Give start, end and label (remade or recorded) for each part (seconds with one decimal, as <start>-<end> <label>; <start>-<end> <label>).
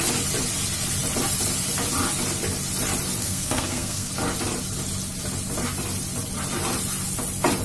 0.0-3.2 recorded; 3.2-4.1 remade; 4.1-7.6 recorded